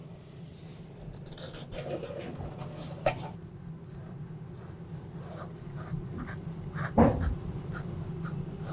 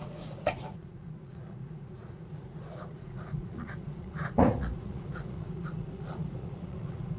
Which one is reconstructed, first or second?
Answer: second